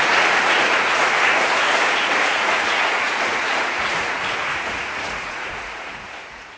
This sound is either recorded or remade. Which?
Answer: remade